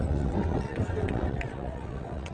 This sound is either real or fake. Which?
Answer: fake